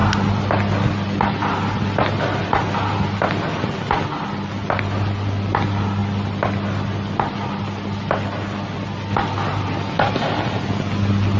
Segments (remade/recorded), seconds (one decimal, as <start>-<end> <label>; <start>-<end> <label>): 0.0-11.4 recorded